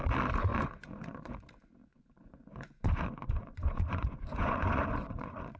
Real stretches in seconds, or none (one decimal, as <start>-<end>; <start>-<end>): 0.0-0.5; 1.3-1.8